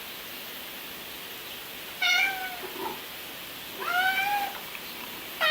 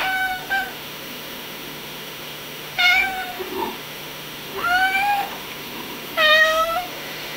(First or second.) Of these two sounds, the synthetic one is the second